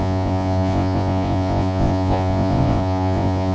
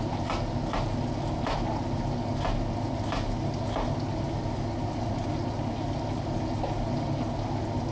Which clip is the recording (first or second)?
second